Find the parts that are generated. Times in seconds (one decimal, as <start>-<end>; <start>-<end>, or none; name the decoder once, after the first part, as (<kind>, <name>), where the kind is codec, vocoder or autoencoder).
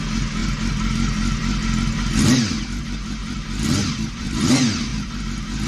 3.2-4.5 (vocoder, BigVGAN v2); 4.9-5.7